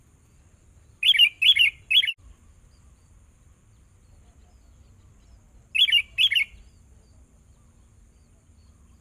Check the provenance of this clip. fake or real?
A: real